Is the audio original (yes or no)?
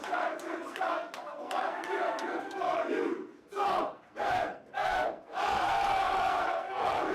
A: no